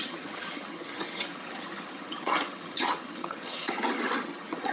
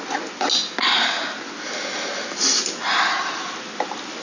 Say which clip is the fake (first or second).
first